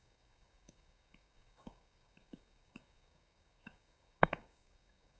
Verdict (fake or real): fake